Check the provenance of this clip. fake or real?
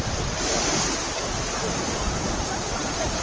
real